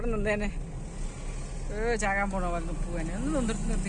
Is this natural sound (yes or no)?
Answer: yes